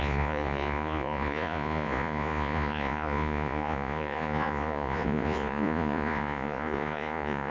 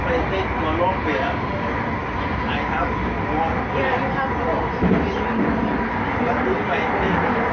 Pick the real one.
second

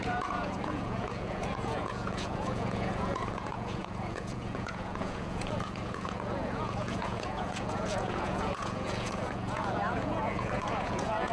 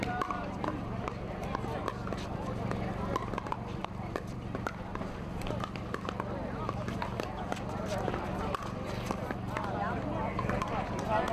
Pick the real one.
second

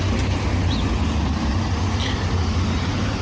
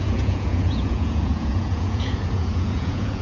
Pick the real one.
first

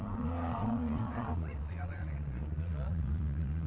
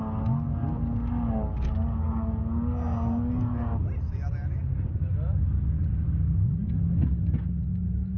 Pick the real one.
second